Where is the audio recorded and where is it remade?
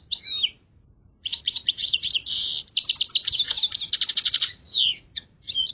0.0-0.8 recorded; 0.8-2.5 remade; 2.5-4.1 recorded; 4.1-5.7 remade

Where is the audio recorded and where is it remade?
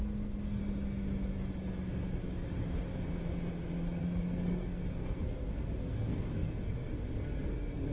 0.0-0.6 remade; 0.6-4.0 recorded; 4.0-7.9 remade